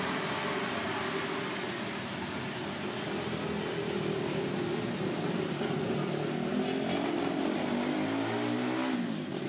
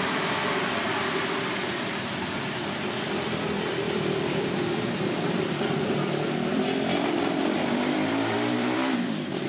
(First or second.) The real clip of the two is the first